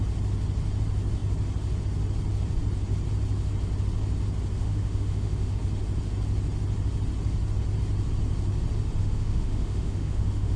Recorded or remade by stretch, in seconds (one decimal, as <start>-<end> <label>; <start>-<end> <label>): 0.0-4.6 recorded; 4.6-5.6 remade; 5.6-9.0 recorded; 9.0-10.6 remade